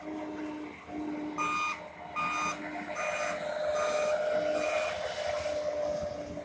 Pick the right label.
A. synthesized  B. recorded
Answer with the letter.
B